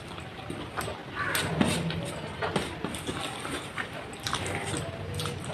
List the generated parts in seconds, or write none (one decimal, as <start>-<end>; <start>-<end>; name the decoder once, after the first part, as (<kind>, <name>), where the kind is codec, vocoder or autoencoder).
none

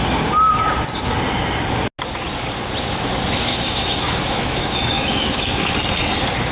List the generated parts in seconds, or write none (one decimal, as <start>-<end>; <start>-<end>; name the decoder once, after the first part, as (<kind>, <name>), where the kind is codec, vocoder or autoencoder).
3.5-5.7 (autoencoder, DAC-VAE)